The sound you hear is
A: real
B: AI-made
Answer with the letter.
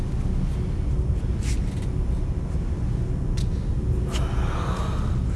A